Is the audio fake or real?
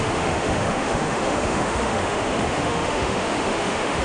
fake